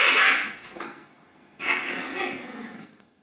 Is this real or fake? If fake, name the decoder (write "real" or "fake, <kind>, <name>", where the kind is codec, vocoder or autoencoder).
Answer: fake, codec, SNAC